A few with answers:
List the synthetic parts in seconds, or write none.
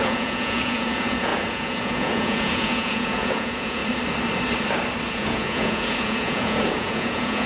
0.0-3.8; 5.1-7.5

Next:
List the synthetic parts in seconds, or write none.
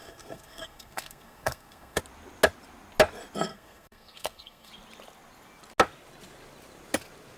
0.0-2.0; 3.5-4.7